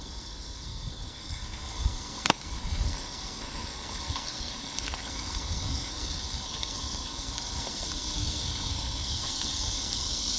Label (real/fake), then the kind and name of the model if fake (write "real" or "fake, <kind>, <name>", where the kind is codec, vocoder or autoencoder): fake, codec, SNAC